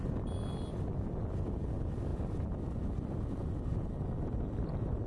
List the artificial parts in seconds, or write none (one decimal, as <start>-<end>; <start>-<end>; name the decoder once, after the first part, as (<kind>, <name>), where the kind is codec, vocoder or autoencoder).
none